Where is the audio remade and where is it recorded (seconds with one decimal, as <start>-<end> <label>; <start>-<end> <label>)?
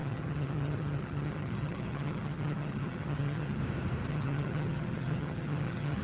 0.0-3.6 remade; 3.6-4.1 recorded; 4.1-6.0 remade